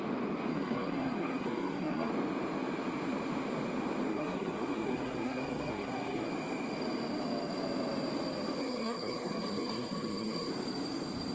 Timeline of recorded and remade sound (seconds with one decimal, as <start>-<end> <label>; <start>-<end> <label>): 0.0-0.5 recorded; 0.5-2.1 remade; 2.1-4.1 recorded; 4.1-6.3 remade; 6.3-8.6 recorded; 8.6-10.5 remade; 10.5-11.3 recorded